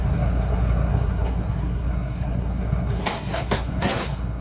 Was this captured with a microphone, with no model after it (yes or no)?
no